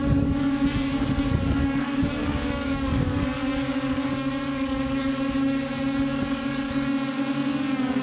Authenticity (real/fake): fake